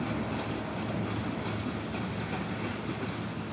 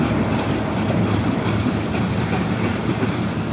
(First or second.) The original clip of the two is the first